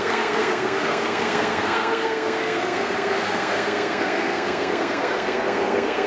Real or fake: fake